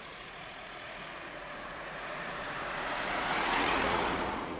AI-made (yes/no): yes